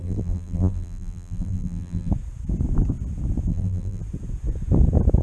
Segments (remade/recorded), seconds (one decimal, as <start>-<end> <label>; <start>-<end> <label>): 0.0-2.1 remade; 2.1-3.5 recorded; 3.5-4.0 remade; 4.0-5.2 recorded